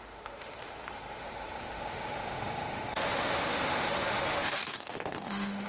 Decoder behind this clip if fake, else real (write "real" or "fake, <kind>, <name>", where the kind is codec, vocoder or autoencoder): fake, autoencoder, DAC-VAE